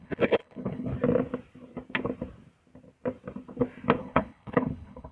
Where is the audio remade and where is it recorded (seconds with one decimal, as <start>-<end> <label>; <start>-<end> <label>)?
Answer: 0.0-0.9 remade; 0.9-4.0 recorded; 4.0-5.1 remade